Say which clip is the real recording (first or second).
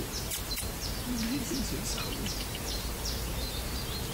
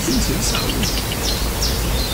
second